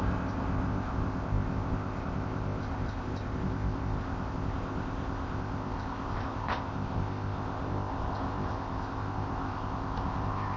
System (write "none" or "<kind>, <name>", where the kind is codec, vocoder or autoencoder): codec, ZipCodec